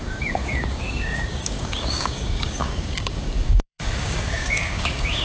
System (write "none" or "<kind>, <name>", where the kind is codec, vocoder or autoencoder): codec, DAC